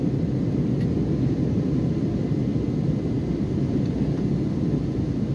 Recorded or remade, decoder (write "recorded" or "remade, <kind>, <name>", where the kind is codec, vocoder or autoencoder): recorded